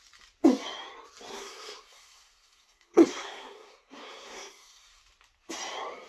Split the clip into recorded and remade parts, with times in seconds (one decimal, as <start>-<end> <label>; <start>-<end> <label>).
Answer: 0.0-1.3 recorded; 1.3-5.0 remade; 5.0-6.1 recorded

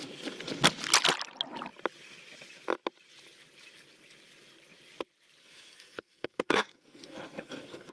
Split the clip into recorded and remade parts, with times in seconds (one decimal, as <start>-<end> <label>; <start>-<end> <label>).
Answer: 0.0-5.4 recorded; 5.4-7.9 remade